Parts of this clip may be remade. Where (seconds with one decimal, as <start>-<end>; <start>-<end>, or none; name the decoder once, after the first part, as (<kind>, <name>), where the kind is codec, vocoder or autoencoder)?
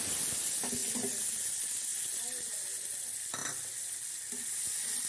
none